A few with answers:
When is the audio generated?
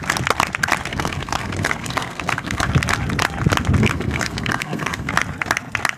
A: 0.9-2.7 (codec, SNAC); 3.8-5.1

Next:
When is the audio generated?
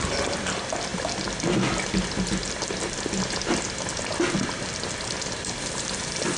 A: none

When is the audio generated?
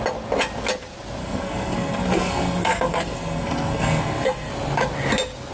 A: 1.2-4.5 (codec, SNAC)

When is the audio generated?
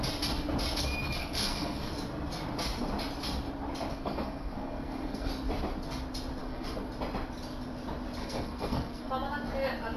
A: 1.2-1.9 (codec, SNAC); 3.9-5.3; 6.4-6.9; 8.2-9.1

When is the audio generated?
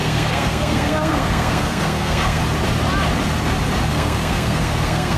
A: 0.0-2.4 (codec, SNAC); 3.9-5.2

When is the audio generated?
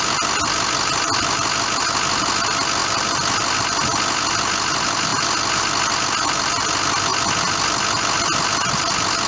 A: none